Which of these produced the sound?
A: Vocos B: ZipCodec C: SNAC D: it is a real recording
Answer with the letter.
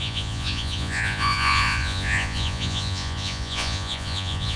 A